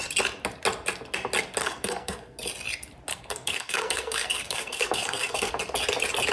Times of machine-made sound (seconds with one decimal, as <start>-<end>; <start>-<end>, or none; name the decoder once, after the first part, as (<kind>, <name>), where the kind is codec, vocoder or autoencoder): 1.6-2.4 (codec, SNAC); 3.1-5.5